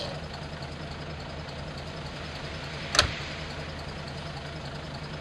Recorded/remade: recorded